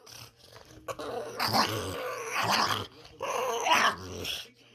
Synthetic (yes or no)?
no